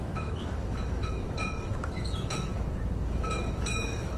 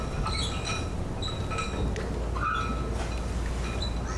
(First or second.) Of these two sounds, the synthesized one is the first